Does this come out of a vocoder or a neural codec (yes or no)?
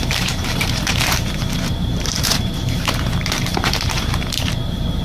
yes